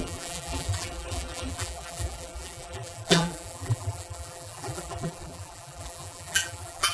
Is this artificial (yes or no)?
yes